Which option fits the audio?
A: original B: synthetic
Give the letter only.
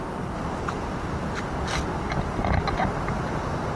A